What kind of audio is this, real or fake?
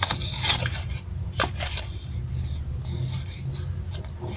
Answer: real